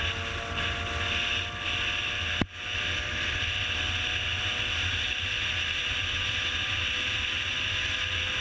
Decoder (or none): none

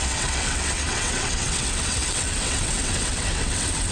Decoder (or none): vocoder, WaveNeXt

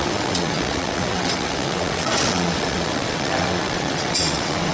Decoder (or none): vocoder, WaveNeXt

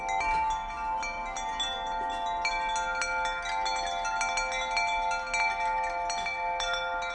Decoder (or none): none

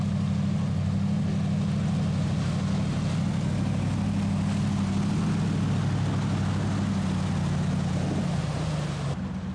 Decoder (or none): none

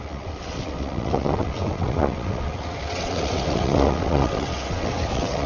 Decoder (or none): vocoder, WaveNeXt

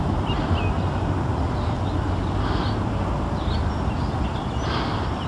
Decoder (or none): none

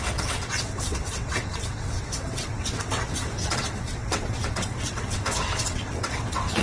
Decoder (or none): vocoder, WaveNeXt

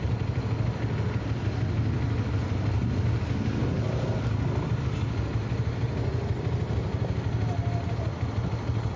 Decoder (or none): none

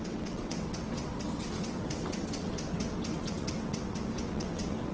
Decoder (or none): vocoder, WaveNeXt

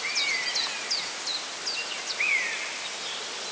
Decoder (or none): none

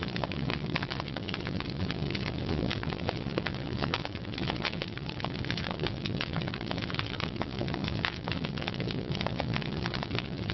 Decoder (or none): vocoder, WaveNeXt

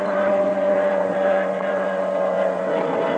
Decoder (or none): vocoder, WaveNeXt